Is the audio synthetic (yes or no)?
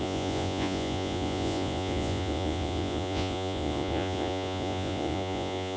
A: yes